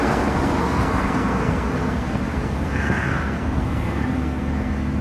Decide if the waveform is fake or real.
fake